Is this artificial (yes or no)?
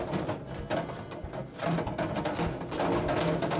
no